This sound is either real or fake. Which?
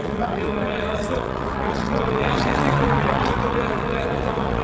fake